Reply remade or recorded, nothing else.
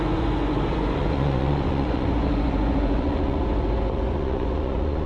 remade